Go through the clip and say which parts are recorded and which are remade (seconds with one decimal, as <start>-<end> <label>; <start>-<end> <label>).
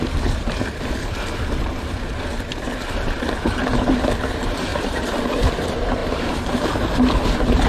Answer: 0.0-7.7 remade